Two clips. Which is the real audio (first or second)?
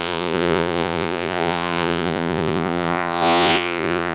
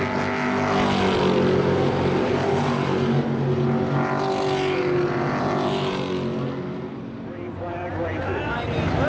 second